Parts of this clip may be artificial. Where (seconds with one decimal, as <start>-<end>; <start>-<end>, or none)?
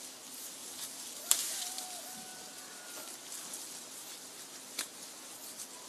0.6-1.5